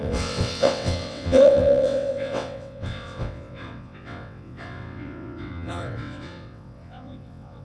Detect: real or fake fake